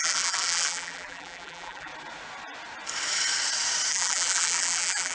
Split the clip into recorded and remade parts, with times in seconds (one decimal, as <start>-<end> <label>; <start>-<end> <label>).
0.0-1.9 remade; 1.9-3.9 recorded; 3.9-5.1 remade